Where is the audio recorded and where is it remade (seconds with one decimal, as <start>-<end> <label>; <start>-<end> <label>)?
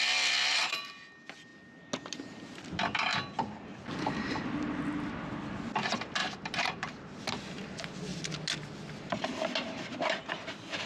0.0-3.1 recorded; 3.1-4.4 remade; 4.4-6.2 recorded; 6.2-7.2 remade; 7.2-10.9 recorded